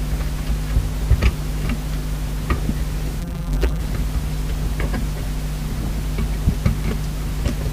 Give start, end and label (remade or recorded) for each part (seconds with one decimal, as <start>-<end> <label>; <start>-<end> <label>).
0.0-3.2 recorded; 3.2-3.8 remade; 3.8-7.7 recorded